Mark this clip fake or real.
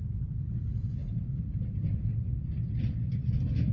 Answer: real